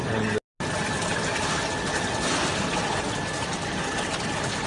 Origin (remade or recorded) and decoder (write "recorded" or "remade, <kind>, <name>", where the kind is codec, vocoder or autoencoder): recorded